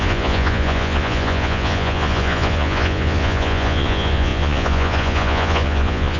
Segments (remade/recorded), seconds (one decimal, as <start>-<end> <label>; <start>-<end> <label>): 0.0-6.2 remade